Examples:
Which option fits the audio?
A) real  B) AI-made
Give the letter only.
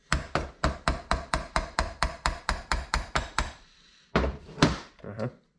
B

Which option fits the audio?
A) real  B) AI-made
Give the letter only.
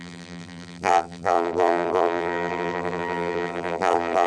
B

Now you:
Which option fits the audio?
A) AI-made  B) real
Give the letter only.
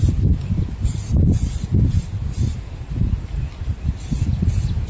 B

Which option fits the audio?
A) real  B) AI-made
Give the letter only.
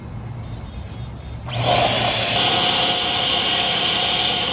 A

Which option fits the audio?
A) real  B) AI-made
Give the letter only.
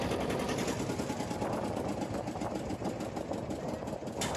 A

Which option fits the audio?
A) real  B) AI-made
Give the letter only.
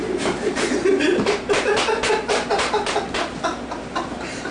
B